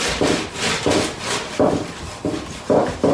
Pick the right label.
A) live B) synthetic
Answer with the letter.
A